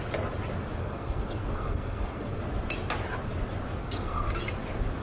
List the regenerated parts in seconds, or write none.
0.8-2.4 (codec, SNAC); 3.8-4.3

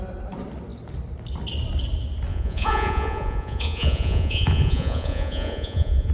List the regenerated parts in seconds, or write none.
2.3-6.1 (vocoder, Vocos)

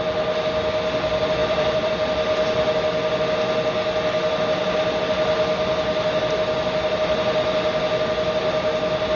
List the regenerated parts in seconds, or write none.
1.4-1.9 (vocoder, BigVGAN v2)

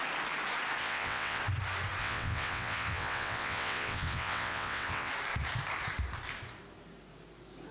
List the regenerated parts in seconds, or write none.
0.8-1.4 (vocoder, WaveNeXt); 2.0-5.1

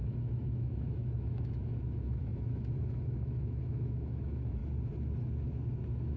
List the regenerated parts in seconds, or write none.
0.0-4.6 (autoencoder, DAC-VAE)